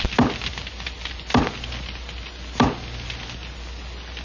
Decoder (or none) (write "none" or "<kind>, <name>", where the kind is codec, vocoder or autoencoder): none